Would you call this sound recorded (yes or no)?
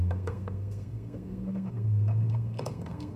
no